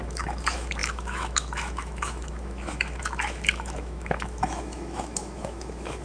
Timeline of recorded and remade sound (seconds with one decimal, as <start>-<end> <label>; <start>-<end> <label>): 0.0-6.0 remade